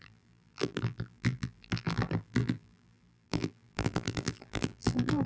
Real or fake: fake